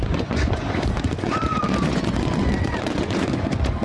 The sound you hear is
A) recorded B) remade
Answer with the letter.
B